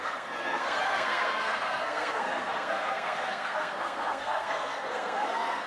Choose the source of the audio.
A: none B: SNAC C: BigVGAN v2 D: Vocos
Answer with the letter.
B